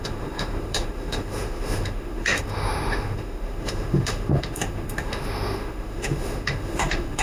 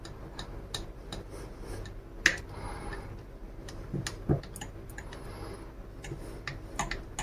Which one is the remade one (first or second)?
first